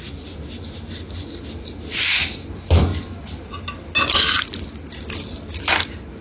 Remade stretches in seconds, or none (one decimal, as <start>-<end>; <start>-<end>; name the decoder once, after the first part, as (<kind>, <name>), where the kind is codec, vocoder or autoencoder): none

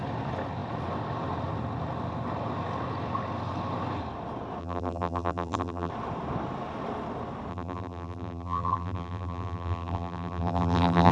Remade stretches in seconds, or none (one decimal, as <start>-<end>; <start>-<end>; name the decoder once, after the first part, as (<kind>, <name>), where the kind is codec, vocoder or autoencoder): 4.6-5.9 (vocoder, BigVGAN v2); 7.5-11.1

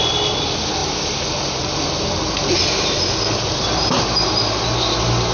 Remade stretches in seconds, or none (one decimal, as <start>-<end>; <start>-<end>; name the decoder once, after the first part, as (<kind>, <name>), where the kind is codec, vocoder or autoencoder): none